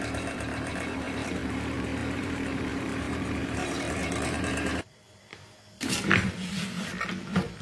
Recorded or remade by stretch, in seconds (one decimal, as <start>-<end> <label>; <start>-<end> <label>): 0.0-5.3 remade; 5.3-7.6 recorded